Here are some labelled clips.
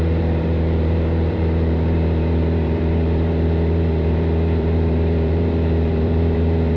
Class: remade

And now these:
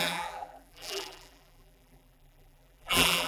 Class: remade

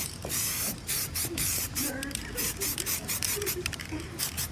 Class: remade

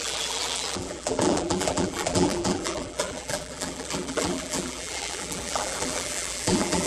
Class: remade